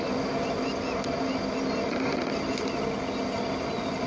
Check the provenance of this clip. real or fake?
real